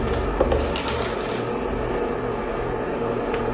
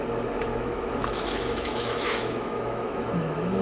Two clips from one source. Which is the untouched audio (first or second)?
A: first